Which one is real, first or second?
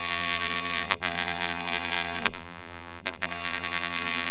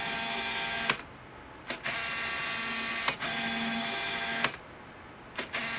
second